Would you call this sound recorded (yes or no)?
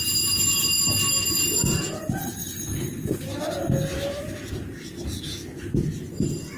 yes